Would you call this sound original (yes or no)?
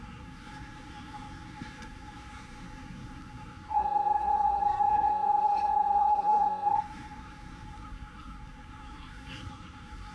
no